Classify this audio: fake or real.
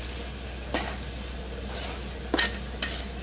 real